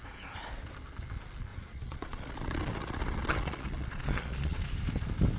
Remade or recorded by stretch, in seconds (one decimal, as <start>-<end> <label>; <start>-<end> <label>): 0.0-1.5 recorded; 1.5-4.7 remade; 4.7-5.4 recorded

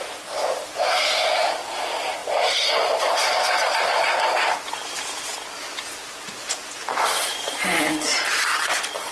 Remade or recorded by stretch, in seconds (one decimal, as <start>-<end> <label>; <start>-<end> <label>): 0.0-2.2 remade; 2.2-3.0 recorded; 3.0-5.3 remade; 5.3-7.2 recorded; 7.2-9.1 remade

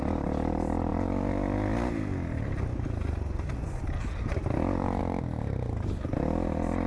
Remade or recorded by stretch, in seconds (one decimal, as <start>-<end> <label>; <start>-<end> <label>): 0.0-6.9 recorded

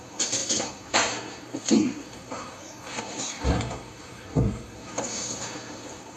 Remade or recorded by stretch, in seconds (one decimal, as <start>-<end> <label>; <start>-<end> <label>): 0.0-6.2 remade

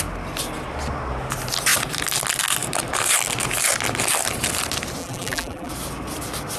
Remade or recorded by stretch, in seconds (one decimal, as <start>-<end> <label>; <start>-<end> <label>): 0.0-5.0 recorded; 5.0-5.7 remade; 5.7-6.6 recorded